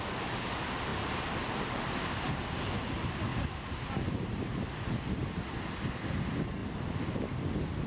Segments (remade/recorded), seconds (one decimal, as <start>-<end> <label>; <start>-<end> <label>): 0.0-0.9 recorded; 0.9-2.9 remade; 2.9-3.3 recorded; 3.3-5.2 remade; 5.2-6.6 recorded; 6.6-7.1 remade; 7.1-7.9 recorded